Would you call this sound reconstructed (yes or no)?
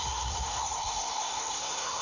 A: yes